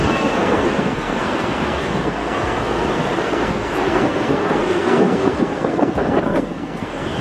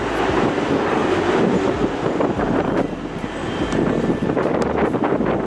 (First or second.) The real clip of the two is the second